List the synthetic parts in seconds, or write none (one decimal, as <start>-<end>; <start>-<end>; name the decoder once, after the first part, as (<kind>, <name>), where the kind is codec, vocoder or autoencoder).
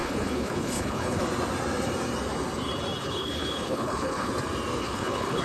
0.0-1.2 (codec, HILCodec); 3.0-4.3; 4.8-5.4